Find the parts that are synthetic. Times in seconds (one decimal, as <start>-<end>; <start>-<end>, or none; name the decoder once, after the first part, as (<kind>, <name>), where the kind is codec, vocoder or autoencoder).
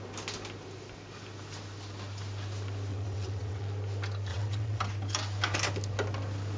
2.9-3.6 (vocoder, WaveNeXt); 4.3-4.8